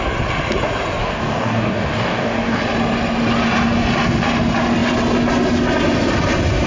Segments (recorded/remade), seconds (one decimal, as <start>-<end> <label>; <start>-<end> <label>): 0.0-1.0 recorded; 1.0-2.6 remade; 2.6-6.7 recorded